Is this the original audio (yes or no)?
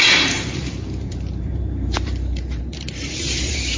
no